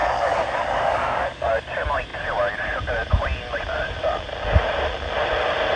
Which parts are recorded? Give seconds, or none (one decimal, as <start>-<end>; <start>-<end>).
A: 1.5-5.8